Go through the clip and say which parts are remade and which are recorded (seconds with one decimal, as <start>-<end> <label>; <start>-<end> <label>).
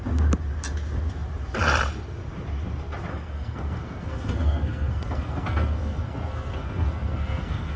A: 0.0-3.1 recorded; 3.1-7.8 remade